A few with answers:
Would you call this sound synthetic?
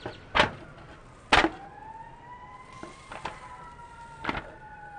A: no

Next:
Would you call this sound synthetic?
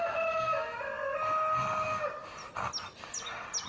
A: no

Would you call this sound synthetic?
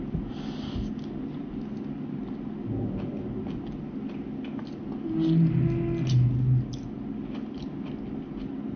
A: no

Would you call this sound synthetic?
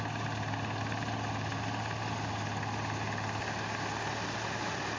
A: no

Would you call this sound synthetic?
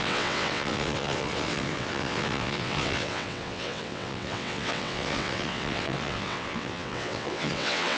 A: yes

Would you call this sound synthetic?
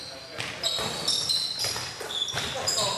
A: no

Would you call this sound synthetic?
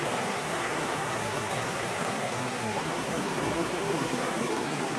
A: yes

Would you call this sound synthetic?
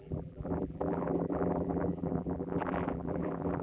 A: yes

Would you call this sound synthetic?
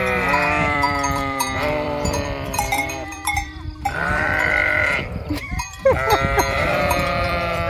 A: yes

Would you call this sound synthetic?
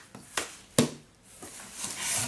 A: no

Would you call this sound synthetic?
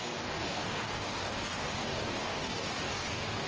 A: yes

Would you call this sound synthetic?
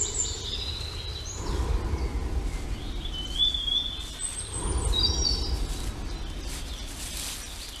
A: no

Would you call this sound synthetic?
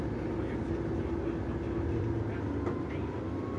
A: no